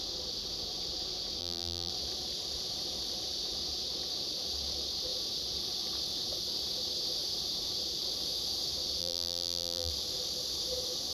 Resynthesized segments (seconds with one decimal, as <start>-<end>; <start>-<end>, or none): 1.4-1.9; 9.0-9.9